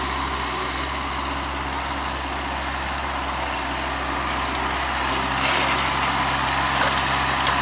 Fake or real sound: real